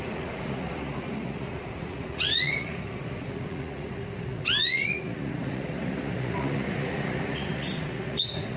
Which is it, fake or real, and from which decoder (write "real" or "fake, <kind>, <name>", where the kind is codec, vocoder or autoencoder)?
fake, vocoder, Vocos